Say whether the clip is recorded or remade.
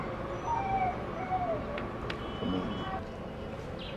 recorded